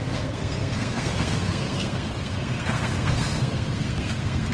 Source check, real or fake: fake